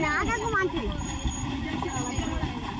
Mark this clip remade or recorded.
recorded